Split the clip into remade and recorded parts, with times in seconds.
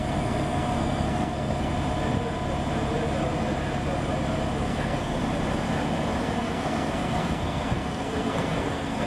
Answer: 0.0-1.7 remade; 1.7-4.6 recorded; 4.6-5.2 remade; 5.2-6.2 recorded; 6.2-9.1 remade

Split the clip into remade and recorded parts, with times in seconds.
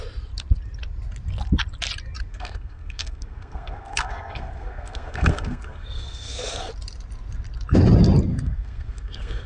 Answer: 0.0-2.3 recorded; 2.3-6.7 remade; 6.7-8.3 recorded; 8.3-9.5 remade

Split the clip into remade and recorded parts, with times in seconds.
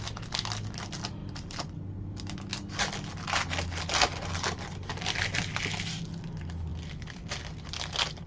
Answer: 0.0-8.3 recorded